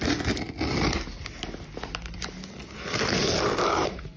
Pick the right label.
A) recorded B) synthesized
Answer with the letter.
A